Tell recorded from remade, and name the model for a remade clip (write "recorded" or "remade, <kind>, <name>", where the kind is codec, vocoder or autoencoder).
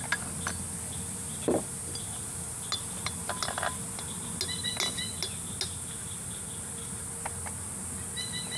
recorded